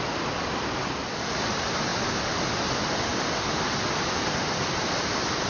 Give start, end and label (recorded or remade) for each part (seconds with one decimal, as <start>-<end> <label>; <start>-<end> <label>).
0.0-0.6 remade; 0.6-3.1 recorded; 3.1-5.5 remade